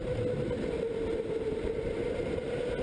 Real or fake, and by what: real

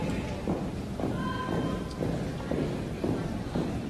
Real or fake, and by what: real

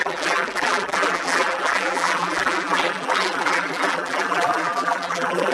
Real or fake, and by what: fake, vocoder, BigVGAN v2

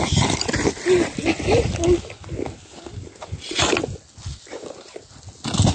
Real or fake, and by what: real